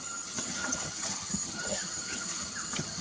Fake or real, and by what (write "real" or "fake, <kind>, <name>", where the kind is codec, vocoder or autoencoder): fake, vocoder, HiFi-GAN